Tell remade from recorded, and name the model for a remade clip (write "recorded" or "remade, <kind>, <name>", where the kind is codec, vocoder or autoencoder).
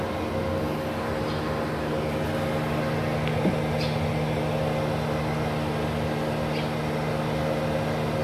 recorded